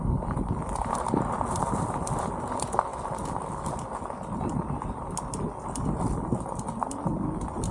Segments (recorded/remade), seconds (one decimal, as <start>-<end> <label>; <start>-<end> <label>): 0.0-7.7 recorded